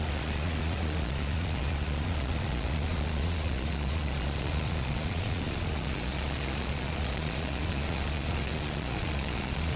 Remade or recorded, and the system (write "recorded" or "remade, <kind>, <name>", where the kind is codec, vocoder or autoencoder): remade, vocoder, Vocos